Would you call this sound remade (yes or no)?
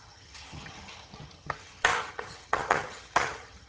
yes